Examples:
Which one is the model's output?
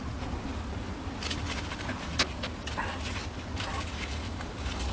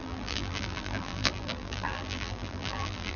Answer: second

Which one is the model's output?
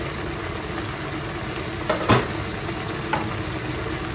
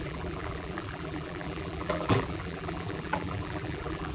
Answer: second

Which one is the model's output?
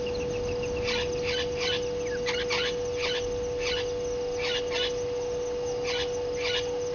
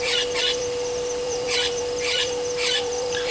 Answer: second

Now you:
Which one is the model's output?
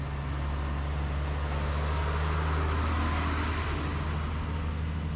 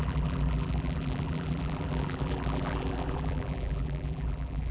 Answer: second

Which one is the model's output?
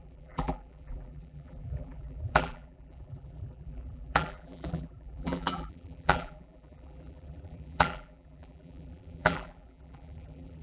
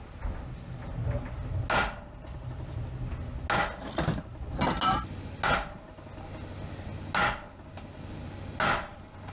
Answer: first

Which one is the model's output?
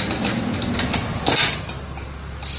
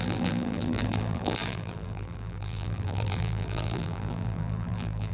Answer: second